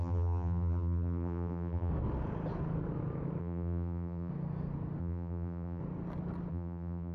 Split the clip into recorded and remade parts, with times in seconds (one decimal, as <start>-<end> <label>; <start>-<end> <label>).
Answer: 0.0-1.9 remade; 1.9-3.4 recorded; 3.4-4.3 remade; 4.3-5.0 recorded; 5.0-5.8 remade; 5.8-6.5 recorded; 6.5-7.1 remade